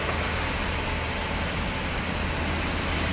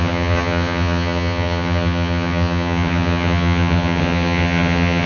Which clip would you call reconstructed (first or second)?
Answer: second